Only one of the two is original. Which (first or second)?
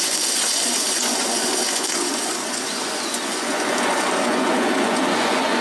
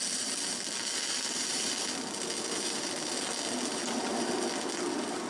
second